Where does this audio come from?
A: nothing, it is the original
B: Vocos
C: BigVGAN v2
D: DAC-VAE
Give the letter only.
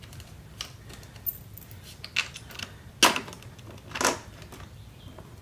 A